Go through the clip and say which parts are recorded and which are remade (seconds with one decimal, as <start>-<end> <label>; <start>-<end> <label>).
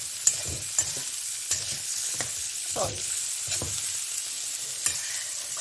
0.0-1.3 recorded; 1.3-3.2 remade; 3.2-5.6 recorded